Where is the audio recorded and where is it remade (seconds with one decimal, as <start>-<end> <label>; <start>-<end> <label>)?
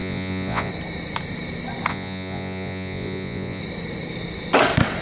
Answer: 0.0-0.7 remade; 0.7-1.9 recorded; 1.9-3.6 remade; 3.6-5.0 recorded